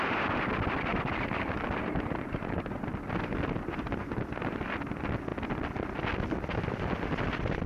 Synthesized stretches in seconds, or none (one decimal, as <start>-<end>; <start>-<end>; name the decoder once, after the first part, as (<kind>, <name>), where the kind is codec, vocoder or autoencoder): 0.9-2.9 (vocoder, BigVGAN v2)